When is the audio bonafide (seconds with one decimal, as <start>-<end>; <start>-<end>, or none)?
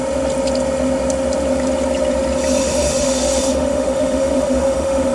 0.0-2.6